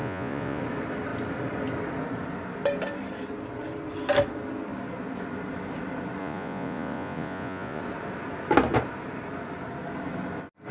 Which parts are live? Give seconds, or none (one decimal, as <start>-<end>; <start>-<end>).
0.6-6.2; 7.8-10.7